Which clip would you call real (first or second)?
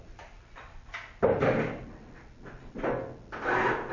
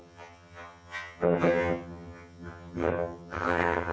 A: first